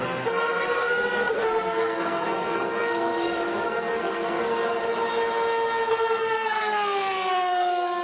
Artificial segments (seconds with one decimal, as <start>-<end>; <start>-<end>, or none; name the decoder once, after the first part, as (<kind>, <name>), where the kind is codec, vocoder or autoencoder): 0.0-4.7 (codec, SNAC); 5.9-8.0